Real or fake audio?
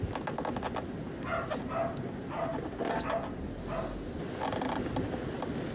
real